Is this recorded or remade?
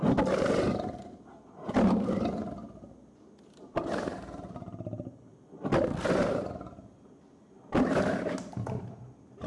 recorded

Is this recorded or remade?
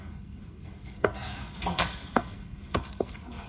remade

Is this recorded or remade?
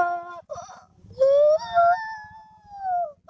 recorded